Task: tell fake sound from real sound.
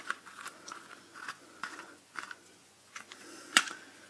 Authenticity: fake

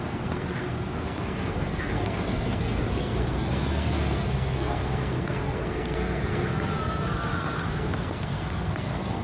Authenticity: fake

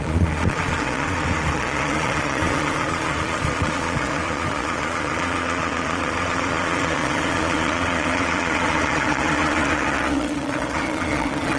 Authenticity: fake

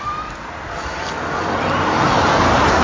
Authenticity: real